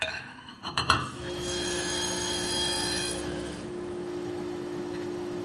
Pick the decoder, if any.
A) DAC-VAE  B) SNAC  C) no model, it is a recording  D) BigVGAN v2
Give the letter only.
A